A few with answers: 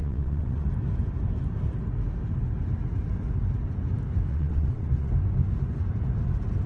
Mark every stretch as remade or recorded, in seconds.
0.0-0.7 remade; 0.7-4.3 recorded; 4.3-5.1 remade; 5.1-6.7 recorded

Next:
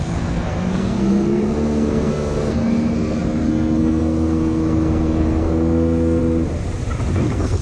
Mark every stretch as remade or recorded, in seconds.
0.0-6.2 remade; 6.2-7.1 recorded; 7.1-7.6 remade

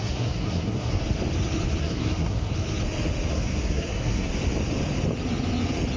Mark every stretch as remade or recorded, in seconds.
0.0-1.0 remade; 1.0-1.8 recorded; 1.8-2.5 remade; 2.5-3.3 recorded; 3.3-4.3 remade; 4.3-6.0 recorded